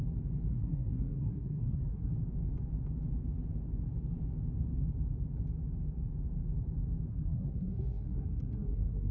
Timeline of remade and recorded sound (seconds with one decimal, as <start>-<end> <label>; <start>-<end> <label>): 0.0-0.5 recorded; 0.5-2.1 remade; 2.1-7.1 recorded; 7.1-9.1 remade